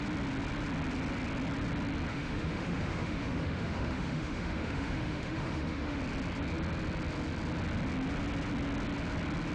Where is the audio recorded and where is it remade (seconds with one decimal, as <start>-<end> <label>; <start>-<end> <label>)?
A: 0.0-2.1 recorded; 2.1-6.0 remade; 6.0-9.5 recorded